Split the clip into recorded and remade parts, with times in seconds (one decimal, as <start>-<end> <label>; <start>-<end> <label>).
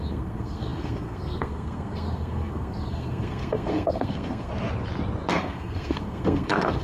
0.0-4.5 remade; 4.5-5.3 recorded; 5.3-6.8 remade